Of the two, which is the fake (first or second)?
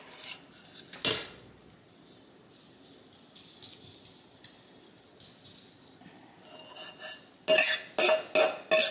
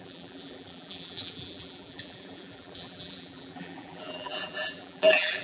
second